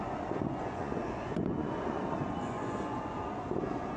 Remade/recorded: remade